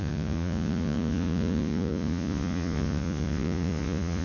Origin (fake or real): fake